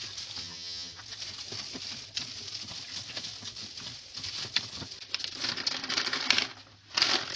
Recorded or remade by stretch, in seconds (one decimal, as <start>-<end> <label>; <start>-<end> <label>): 0.0-0.4 recorded; 0.4-1.0 remade; 1.0-7.4 recorded